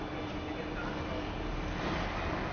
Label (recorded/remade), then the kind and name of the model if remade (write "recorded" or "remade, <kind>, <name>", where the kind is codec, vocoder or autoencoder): recorded